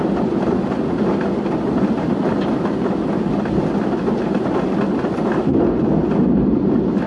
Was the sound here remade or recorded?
recorded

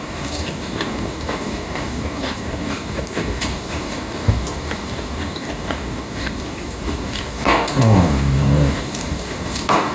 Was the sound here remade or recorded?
remade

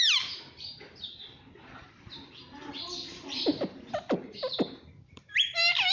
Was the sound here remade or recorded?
remade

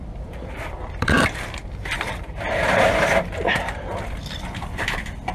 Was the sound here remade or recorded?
remade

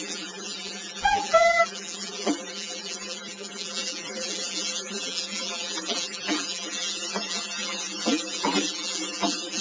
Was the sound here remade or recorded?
remade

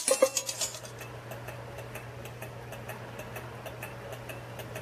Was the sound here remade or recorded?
recorded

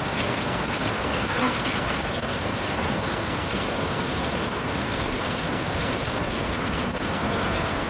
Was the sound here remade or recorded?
remade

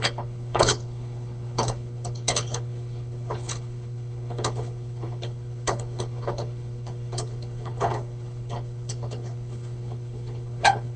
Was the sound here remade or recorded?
remade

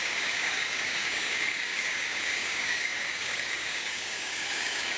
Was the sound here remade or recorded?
remade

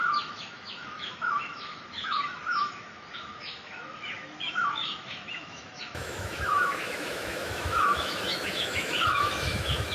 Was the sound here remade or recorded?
remade